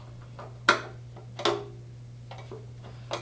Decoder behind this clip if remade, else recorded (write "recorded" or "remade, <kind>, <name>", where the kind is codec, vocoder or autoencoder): recorded